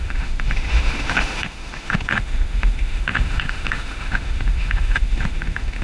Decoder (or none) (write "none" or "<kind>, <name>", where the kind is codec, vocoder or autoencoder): autoencoder, DAC-VAE